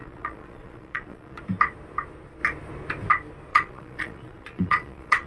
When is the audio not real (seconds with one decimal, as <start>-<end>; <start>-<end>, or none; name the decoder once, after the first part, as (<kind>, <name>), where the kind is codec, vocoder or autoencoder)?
0.0-1.4 (vocoder, Vocos); 3.5-5.3